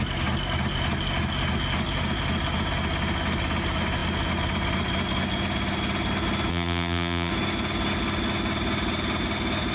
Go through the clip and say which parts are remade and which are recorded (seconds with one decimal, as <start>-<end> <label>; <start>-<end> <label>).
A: 0.0-6.5 recorded; 6.5-7.3 remade; 7.3-9.7 recorded